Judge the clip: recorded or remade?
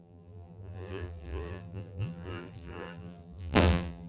remade